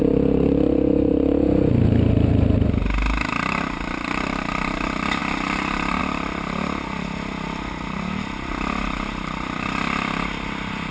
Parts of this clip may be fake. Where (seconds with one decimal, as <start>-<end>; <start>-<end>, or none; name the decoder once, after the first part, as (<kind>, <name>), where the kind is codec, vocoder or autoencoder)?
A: none